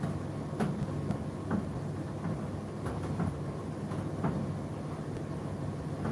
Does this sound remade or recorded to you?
recorded